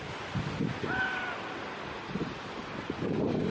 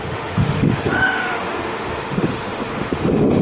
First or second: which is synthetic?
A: second